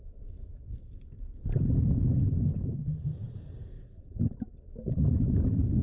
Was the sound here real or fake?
real